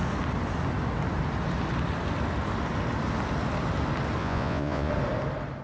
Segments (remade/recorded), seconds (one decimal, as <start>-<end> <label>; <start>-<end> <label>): 0.0-4.2 recorded; 4.2-4.9 remade; 4.9-5.6 recorded